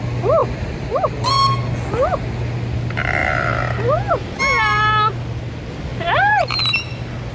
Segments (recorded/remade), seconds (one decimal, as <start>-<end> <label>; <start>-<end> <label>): 0.0-0.4 recorded; 0.4-1.3 remade; 1.3-5.9 recorded; 5.9-6.6 remade; 6.6-7.3 recorded